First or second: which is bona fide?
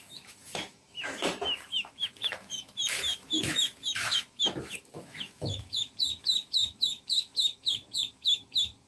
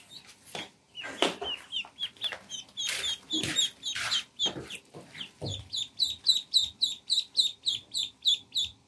second